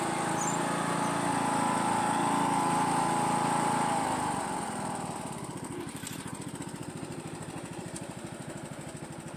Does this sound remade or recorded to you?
recorded